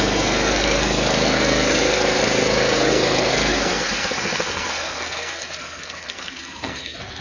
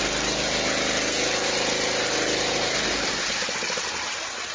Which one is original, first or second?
second